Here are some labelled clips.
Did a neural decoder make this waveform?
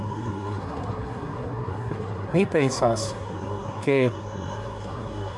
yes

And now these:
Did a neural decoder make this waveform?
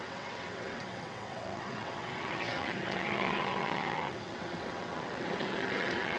yes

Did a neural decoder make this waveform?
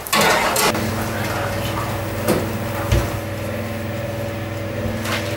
no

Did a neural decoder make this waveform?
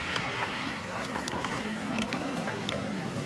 yes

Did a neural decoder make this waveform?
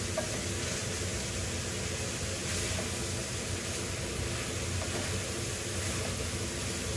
no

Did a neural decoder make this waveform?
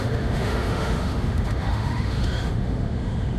yes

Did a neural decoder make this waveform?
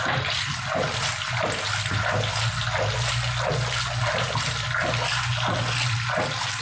no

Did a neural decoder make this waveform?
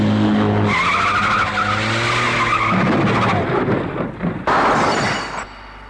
no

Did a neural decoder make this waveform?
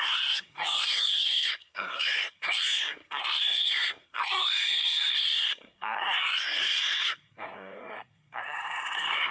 yes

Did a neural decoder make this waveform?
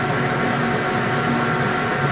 no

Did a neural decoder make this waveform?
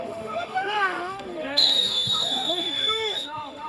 yes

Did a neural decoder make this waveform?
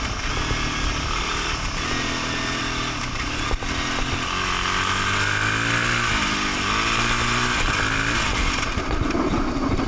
no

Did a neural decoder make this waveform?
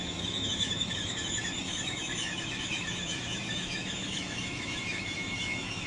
yes